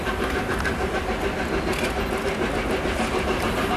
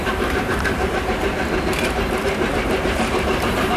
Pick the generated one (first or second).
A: second